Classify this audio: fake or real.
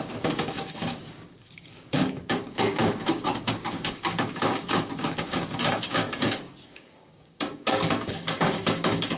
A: fake